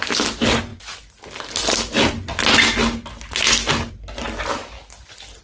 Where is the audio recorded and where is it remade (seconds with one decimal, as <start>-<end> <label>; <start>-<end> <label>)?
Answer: 0.0-5.4 recorded